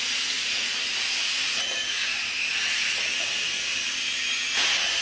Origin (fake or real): real